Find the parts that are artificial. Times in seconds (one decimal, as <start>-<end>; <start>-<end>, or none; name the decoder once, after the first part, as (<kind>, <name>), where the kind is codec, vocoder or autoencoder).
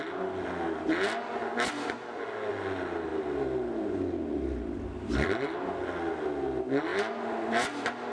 none